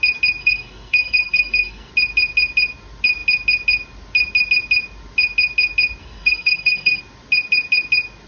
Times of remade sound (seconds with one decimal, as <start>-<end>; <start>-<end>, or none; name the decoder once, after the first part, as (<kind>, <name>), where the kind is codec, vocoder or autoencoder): 0.4-1.9 (codec, SNAC); 6.0-7.0